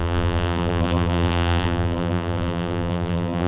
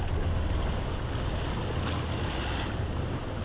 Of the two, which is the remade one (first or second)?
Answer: first